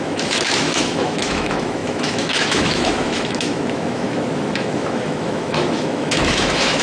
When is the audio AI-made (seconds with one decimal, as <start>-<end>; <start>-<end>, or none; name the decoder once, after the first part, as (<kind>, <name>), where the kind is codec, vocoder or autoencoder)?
0.0-6.8 (autoencoder, DAC-VAE)